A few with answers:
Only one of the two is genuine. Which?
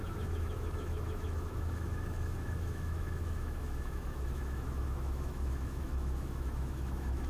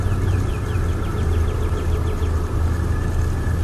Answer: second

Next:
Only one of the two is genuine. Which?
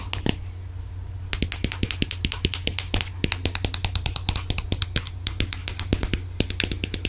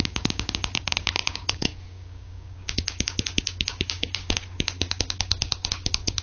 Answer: first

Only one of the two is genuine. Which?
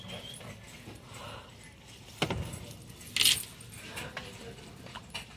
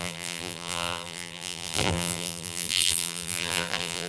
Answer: first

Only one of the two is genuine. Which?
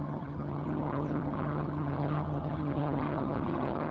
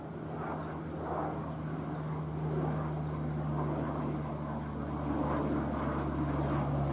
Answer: second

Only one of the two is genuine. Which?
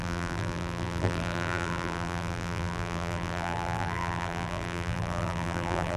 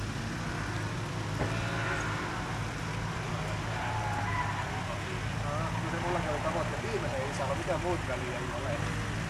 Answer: second